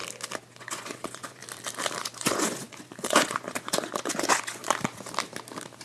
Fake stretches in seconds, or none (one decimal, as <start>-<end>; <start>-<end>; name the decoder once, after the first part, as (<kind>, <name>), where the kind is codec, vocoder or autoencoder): 0.6-1.4 (vocoder, Vocos); 2.0-4.6